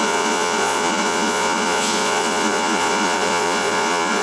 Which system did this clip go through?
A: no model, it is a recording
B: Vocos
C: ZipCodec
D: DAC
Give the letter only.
B